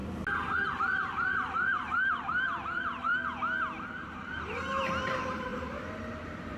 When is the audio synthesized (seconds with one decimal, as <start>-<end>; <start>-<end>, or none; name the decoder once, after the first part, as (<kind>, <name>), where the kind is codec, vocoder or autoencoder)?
0.7-3.1 (vocoder, BigVGAN v2); 4.0-5.5; 6.1-6.6

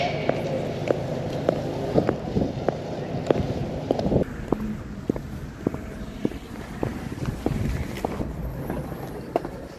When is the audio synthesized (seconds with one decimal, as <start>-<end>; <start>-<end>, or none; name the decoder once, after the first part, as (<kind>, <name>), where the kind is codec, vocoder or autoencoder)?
0.0-3.6 (vocoder, BigVGAN v2); 8.0-9.8

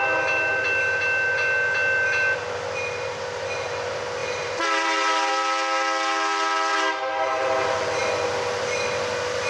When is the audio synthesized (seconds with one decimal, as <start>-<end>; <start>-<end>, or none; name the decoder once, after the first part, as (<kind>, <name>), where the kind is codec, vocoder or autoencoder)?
4.2-5.3 (vocoder, BigVGAN v2); 6.7-8.1

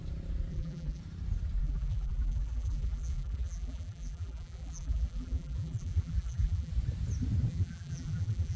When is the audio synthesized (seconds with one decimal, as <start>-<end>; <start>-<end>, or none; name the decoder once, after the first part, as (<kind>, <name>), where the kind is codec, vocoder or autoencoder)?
0.5-1.0 (vocoder, BigVGAN v2); 1.6-6.7; 7.5-8.6

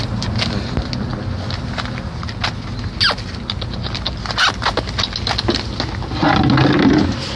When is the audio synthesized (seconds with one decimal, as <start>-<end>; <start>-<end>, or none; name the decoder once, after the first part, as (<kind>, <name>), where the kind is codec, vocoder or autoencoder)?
none

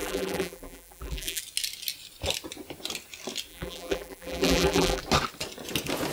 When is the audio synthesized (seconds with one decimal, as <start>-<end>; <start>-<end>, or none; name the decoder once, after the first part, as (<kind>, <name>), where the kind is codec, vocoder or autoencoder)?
0.0-1.4 (vocoder, BigVGAN v2); 3.5-5.0

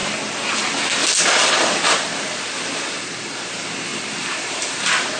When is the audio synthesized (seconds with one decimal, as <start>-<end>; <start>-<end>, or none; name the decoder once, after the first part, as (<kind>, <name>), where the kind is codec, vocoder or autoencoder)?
3.9-4.8 (vocoder, BigVGAN v2)